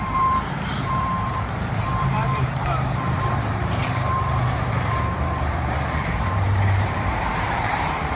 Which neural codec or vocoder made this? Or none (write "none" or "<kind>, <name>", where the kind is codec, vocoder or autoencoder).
vocoder, BigVGAN v2